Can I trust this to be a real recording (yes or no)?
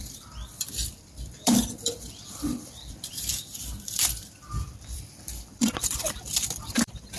no